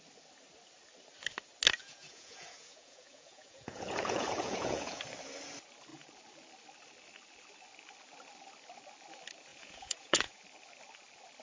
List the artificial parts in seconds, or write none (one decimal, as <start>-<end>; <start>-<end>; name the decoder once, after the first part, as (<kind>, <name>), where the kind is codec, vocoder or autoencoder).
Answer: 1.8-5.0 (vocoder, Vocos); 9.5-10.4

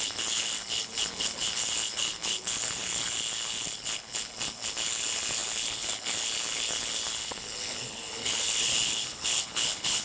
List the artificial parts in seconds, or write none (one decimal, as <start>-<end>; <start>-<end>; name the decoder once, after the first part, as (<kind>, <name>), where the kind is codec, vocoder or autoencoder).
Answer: 0.0-10.0 (codec, HILCodec)

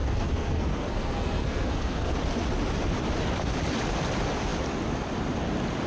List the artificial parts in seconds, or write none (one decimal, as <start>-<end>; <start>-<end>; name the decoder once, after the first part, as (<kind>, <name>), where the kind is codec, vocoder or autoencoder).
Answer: 0.0-2.1 (codec, SNAC)